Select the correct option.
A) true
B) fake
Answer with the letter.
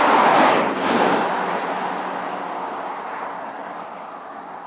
A